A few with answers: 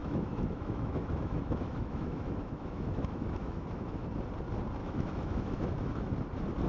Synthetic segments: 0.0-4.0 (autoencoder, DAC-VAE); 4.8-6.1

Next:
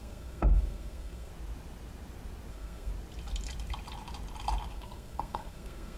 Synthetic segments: 0.0-1.3 (codec, SNAC); 2.5-2.9; 4.7-6.0

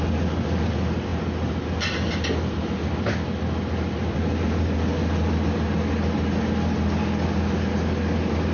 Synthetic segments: none

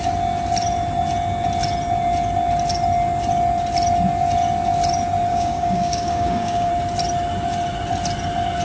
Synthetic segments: 5.3-6.7 (codec, DAC)

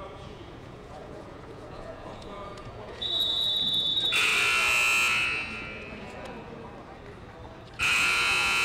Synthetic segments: 0.0-4.3 (vocoder, Vocos); 7.8-8.6

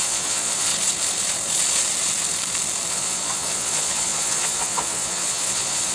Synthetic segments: 0.0-0.7 (vocoder, Vocos); 2.9-5.9

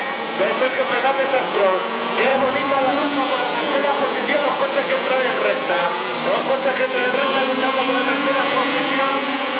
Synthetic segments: 0.0-6.1 (vocoder, Vocos); 6.6-9.6